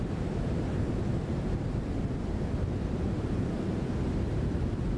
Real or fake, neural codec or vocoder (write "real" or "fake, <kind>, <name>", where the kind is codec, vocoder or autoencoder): real